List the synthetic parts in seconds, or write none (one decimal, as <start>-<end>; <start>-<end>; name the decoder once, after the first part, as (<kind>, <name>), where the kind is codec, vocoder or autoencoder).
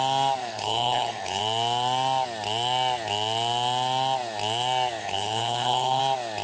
0.4-1.4 (codec, HILCodec); 5.0-6.0